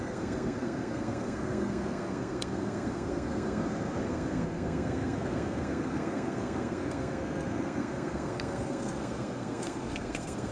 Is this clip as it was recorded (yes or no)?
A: no